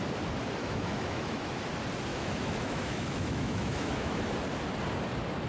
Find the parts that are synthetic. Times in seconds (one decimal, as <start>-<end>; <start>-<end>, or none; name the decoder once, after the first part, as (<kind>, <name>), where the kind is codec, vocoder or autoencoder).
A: 0.6-1.5 (autoencoder, DAC-VAE); 2.1-4.2